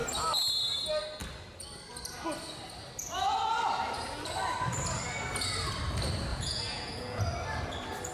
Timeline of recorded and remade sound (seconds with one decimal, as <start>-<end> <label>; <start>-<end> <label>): 0.0-6.3 recorded; 6.3-7.2 remade; 7.2-8.1 recorded